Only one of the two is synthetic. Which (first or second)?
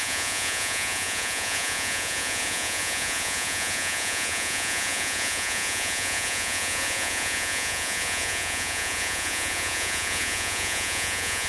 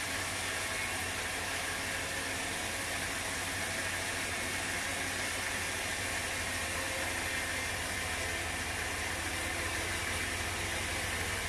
first